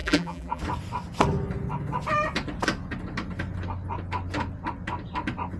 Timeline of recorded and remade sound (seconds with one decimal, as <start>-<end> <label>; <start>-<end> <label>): 0.0-0.6 remade; 0.6-5.6 recorded

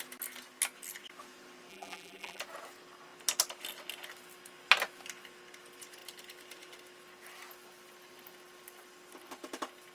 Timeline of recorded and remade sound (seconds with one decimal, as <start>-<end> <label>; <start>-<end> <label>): 0.0-1.7 recorded; 1.7-2.4 remade; 2.4-9.9 recorded

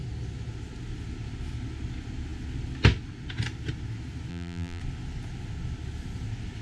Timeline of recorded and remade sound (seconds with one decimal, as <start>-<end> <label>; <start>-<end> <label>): 0.0-4.3 recorded; 4.3-4.8 remade; 4.8-6.6 recorded

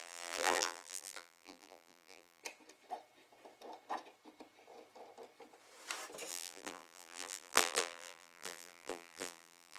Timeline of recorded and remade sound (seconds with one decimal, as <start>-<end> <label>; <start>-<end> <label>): 0.0-2.4 remade; 2.4-6.3 recorded; 6.3-9.8 remade

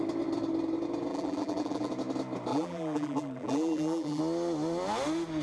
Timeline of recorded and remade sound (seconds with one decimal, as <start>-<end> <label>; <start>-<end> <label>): 0.0-1.1 recorded; 1.1-1.9 remade; 1.9-2.5 recorded; 2.5-4.2 remade; 4.2-5.4 recorded

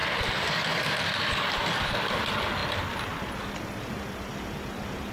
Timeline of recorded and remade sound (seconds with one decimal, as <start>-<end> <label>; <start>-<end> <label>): 0.0-2.1 remade; 2.1-5.1 recorded

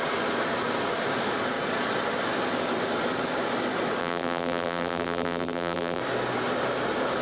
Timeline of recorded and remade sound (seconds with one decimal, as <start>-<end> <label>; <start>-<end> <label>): 0.0-4.0 recorded; 4.0-6.0 remade; 6.0-7.2 recorded

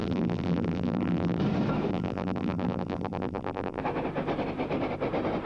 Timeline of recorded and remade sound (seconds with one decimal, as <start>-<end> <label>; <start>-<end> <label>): 0.0-1.4 remade; 1.4-1.9 recorded; 1.9-3.8 remade; 3.8-5.5 recorded